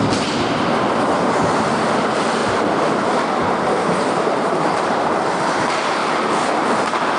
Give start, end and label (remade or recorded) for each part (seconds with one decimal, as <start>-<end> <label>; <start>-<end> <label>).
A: 0.0-2.4 remade; 2.4-3.5 recorded; 3.5-7.2 remade